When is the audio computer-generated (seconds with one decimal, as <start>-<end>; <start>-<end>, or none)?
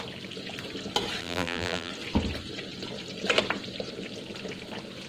1.2-1.9